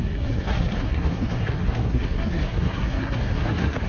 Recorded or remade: remade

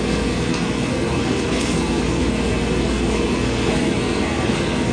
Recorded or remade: remade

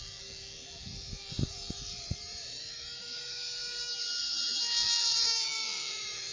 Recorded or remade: remade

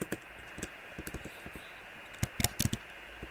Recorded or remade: recorded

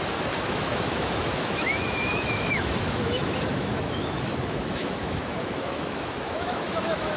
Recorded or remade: remade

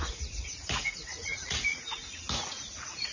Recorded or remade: remade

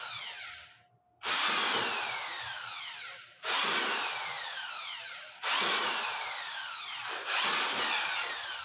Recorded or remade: recorded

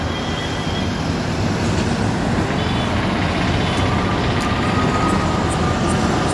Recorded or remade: recorded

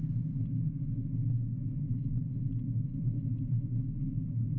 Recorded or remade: recorded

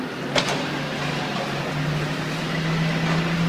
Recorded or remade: recorded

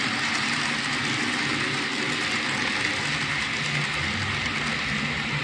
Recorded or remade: recorded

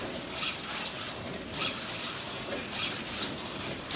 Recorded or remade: recorded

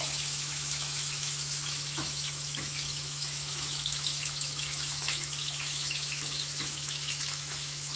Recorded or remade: remade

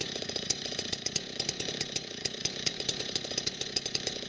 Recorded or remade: remade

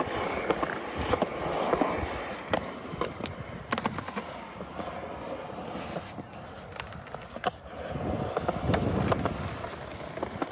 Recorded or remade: recorded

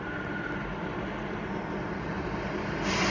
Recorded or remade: recorded